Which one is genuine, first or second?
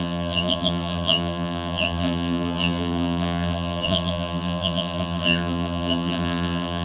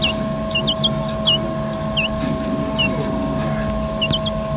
second